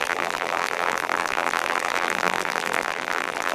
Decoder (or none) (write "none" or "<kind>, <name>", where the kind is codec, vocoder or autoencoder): vocoder, BigVGAN v2